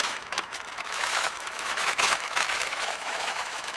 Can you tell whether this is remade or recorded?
remade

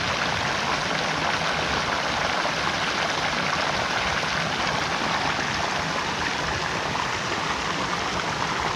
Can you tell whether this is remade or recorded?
recorded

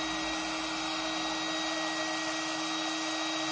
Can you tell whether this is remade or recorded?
recorded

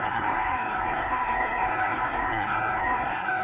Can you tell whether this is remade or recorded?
remade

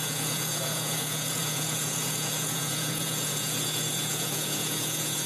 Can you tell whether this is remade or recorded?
remade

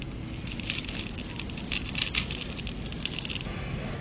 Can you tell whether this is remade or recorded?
recorded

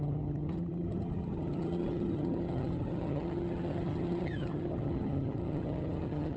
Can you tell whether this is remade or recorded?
remade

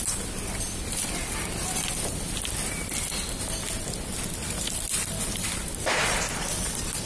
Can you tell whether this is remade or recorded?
recorded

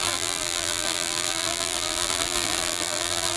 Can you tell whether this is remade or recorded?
remade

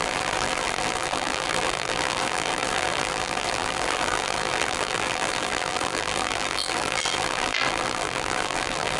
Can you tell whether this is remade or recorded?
remade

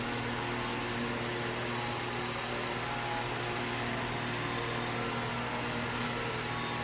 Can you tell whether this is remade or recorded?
recorded